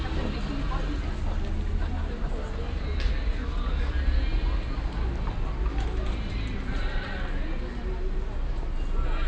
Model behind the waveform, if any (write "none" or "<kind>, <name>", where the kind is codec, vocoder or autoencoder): none